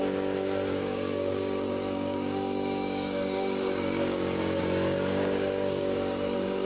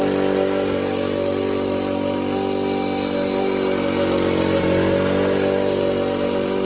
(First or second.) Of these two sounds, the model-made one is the first